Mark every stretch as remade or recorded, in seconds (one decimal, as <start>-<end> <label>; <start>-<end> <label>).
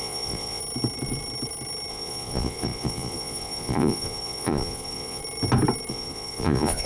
0.0-0.6 remade; 0.6-1.9 recorded; 1.9-5.2 remade; 5.2-5.9 recorded; 5.9-6.9 remade